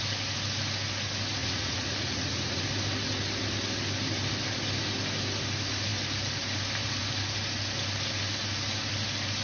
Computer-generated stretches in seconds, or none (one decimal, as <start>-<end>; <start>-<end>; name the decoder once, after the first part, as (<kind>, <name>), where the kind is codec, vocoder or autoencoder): 1.4-2.6 (vocoder, Vocos)